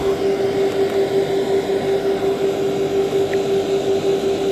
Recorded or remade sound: recorded